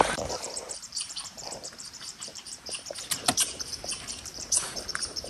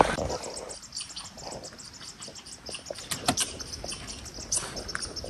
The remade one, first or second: first